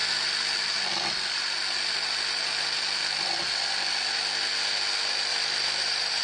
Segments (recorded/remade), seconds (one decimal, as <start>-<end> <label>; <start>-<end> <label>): 0.0-5.3 recorded; 5.3-6.2 remade